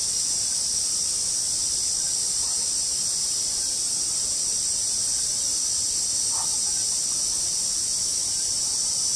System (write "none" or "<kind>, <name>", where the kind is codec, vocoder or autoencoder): none